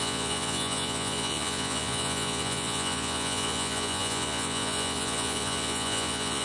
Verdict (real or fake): fake